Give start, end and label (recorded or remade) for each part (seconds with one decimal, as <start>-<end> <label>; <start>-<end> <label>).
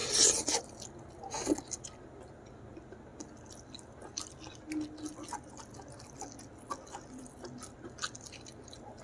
0.0-9.0 recorded